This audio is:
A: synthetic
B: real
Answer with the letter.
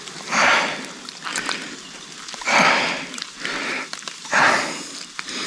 B